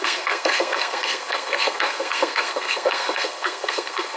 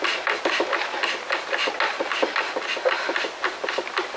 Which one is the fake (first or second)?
first